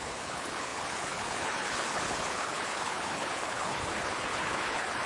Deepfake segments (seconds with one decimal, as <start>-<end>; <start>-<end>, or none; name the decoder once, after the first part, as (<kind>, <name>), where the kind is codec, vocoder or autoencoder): 0.0-5.1 (codec, HILCodec)